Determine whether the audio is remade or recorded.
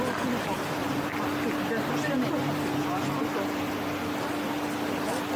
recorded